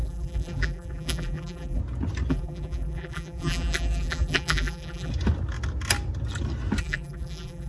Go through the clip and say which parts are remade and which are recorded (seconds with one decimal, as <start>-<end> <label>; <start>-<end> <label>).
0.0-1.8 remade; 1.8-2.3 recorded; 2.3-5.1 remade; 5.1-6.8 recorded; 6.8-7.7 remade